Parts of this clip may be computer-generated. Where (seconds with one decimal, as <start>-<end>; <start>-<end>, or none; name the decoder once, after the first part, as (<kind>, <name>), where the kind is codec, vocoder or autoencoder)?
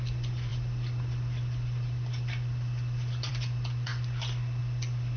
none